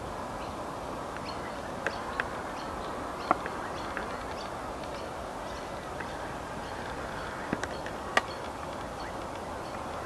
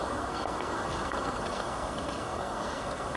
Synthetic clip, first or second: second